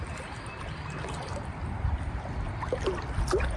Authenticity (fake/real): fake